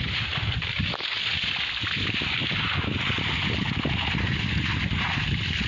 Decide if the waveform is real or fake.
real